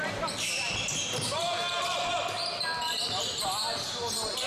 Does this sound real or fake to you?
real